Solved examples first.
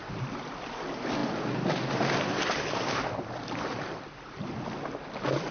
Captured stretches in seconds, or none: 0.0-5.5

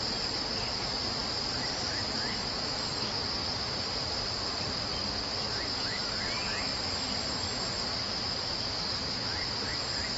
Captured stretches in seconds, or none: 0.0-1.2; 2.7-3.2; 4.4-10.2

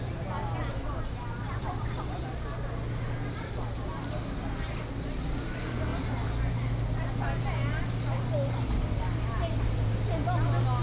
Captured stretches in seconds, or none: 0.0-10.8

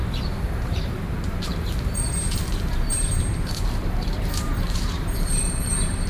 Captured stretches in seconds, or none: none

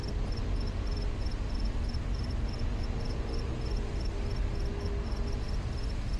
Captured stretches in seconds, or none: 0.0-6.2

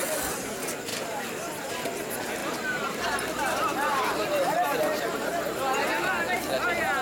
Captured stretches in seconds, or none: 0.0-0.9; 1.7-2.4; 3.1-3.9; 5.2-7.0